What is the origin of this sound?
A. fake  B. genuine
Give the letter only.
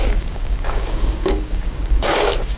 A